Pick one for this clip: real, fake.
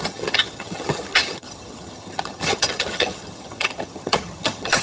fake